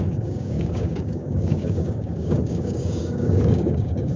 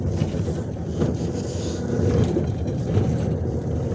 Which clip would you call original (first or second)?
second